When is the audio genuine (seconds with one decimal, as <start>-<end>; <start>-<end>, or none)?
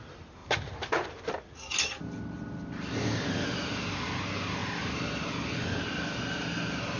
0.0-0.4; 1.4-4.6; 5.4-7.0